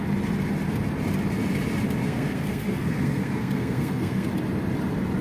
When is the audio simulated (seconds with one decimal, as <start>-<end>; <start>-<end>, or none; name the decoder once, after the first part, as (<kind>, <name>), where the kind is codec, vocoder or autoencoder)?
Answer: 2.0-4.3 (codec, SNAC)